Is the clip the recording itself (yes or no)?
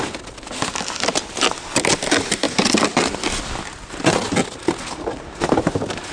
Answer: yes